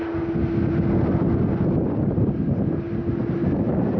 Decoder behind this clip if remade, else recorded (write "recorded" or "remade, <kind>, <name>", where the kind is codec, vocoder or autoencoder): recorded